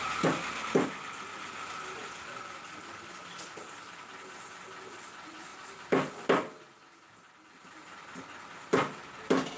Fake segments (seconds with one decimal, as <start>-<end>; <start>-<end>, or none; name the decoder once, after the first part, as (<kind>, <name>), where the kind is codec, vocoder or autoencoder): 5.5-6.1 (vocoder, BigVGAN v2)